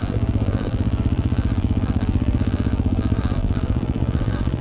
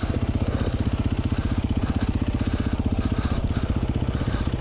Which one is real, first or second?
second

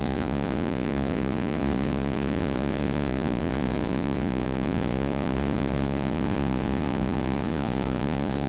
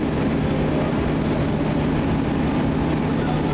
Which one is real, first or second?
second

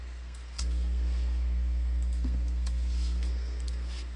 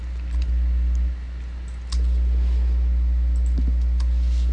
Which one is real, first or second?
second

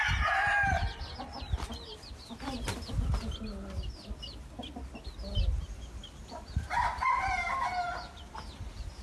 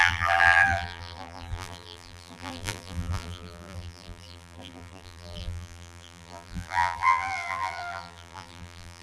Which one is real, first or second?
first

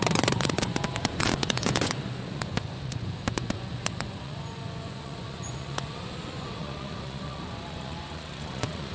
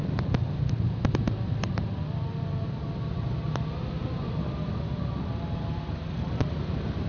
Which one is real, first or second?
second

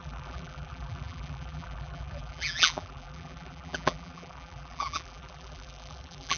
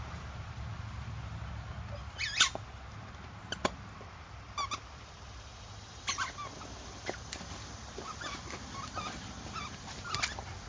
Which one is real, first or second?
second